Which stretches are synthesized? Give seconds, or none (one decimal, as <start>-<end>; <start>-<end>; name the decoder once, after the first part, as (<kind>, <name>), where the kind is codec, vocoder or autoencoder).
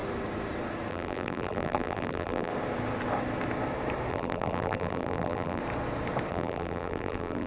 0.9-2.5 (vocoder, BigVGAN v2); 4.1-5.6; 6.3-7.5